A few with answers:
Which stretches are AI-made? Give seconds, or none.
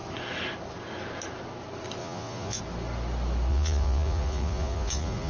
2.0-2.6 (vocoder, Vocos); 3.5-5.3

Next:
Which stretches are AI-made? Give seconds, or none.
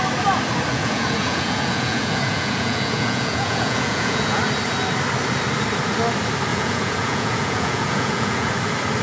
0.7-4.4 (vocoder, Vocos); 6.5-8.5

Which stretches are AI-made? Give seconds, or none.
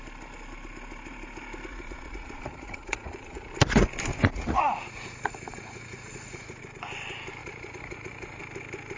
1.7-3.5 (vocoder, Vocos); 4.1-6.6; 7.4-8.4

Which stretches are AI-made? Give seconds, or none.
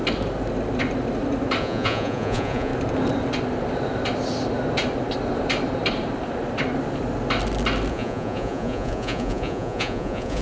1.6-2.7 (vocoder, Vocos); 7.9-10.4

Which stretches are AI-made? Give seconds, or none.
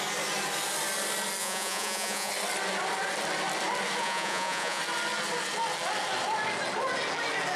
1.4-2.3 (vocoder, Vocos); 4.0-4.8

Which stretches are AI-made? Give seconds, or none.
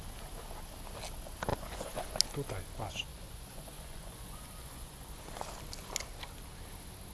1.5-2.1 (vocoder, Vocos); 3.1-5.2